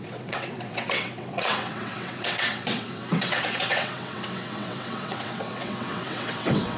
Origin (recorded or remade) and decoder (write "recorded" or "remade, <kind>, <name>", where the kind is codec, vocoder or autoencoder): remade, vocoder, WaveNeXt